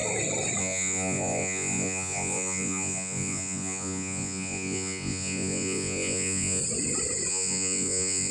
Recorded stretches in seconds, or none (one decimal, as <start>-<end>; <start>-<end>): 0.0-0.6; 6.6-7.3